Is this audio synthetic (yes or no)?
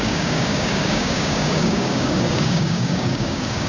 yes